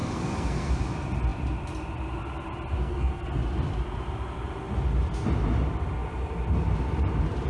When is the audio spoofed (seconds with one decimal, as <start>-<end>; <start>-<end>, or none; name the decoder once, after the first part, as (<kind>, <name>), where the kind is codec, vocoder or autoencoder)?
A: 0.0-0.7 (codec, SNAC); 2.8-3.3